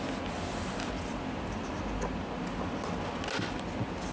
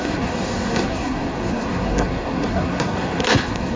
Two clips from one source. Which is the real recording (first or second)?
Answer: first